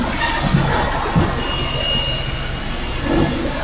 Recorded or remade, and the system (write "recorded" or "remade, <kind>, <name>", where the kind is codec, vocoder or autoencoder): recorded